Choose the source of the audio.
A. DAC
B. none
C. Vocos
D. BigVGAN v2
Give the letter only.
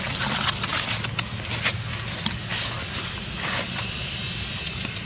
B